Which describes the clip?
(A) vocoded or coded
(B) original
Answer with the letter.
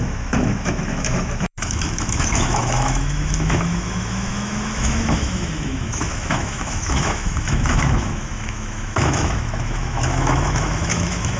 A